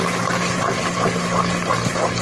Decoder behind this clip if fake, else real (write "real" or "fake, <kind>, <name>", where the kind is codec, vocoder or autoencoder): real